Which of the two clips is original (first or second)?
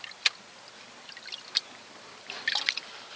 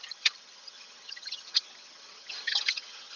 first